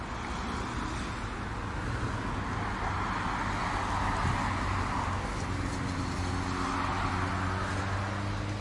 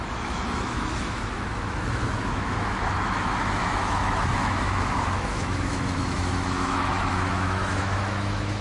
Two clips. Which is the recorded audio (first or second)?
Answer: first